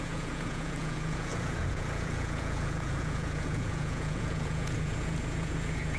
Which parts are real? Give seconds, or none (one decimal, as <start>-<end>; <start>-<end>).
none